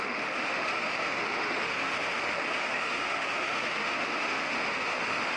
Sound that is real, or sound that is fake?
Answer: fake